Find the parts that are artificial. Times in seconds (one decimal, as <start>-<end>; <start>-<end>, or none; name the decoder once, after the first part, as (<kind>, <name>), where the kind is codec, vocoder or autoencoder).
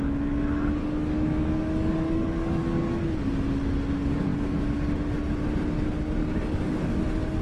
0.8-2.9 (codec, DAC); 6.2-7.0